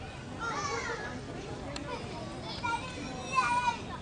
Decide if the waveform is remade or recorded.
recorded